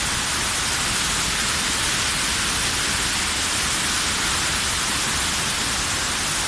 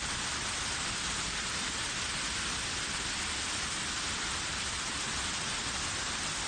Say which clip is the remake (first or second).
second